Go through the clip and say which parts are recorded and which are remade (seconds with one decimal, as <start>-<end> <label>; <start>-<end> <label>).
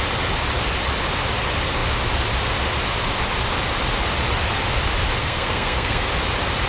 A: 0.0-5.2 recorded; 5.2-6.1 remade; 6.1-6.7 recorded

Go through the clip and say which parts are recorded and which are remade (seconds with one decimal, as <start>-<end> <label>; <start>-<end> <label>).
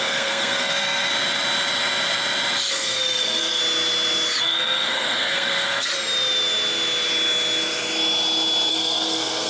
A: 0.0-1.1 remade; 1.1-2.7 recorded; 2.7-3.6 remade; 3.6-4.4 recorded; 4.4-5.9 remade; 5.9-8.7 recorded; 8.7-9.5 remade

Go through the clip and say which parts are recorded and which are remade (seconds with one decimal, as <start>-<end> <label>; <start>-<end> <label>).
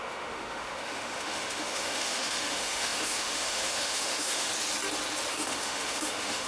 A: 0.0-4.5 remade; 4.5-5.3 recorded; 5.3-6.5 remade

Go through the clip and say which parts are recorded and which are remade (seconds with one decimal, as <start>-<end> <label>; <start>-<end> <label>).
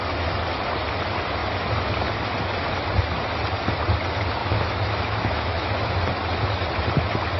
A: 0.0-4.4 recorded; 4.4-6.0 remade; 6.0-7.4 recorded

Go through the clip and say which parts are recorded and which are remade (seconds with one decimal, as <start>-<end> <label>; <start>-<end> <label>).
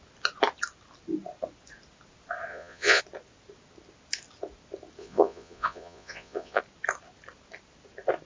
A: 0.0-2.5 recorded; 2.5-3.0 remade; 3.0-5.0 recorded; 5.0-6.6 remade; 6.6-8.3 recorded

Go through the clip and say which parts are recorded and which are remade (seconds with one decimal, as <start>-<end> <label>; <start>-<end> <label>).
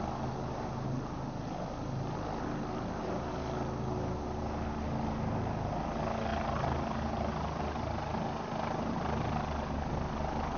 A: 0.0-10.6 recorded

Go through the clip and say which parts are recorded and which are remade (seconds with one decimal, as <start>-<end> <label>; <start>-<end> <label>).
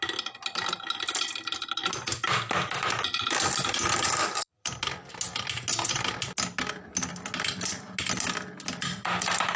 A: 0.0-4.4 recorded; 4.4-5.1 remade; 5.1-9.6 recorded